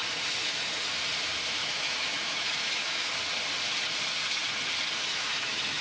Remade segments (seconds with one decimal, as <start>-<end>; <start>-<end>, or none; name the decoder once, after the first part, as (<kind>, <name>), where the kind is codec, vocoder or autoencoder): 1.6-3.1 (autoencoder, DAC-VAE); 5.1-5.8

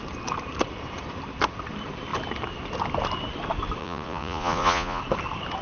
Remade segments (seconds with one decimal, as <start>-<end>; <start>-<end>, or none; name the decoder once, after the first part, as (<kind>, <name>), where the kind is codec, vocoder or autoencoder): 3.8-5.0 (vocoder, Vocos)

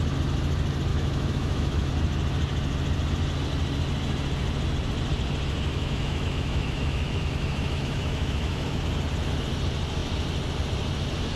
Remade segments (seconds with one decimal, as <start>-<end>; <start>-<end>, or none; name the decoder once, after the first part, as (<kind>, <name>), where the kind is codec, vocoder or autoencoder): 0.9-1.9 (autoencoder, DAC-VAE); 5.7-8.8

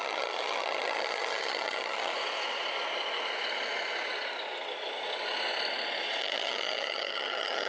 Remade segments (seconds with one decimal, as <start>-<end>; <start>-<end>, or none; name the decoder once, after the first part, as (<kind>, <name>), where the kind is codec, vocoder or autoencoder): 0.0-2.1 (vocoder, HiFi-GAN); 6.2-7.7

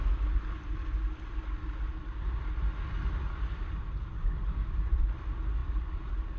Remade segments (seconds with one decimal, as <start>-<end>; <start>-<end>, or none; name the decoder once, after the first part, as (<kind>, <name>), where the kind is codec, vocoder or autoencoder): none

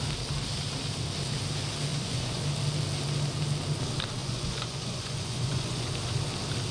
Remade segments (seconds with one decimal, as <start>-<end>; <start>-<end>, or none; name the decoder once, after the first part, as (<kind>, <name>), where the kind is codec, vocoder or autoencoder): 1.9-2.4 (vocoder, Vocos); 4.2-5.9

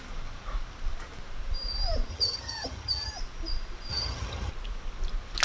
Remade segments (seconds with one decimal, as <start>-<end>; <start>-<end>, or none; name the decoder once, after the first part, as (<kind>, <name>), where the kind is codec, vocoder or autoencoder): 2.1-3.1 (vocoder, HiFi-GAN); 3.9-4.5